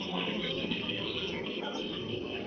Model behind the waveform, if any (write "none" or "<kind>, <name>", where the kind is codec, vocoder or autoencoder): codec, SNAC